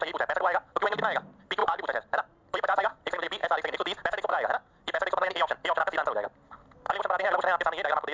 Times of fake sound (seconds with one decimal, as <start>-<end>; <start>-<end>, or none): 1.6-2.8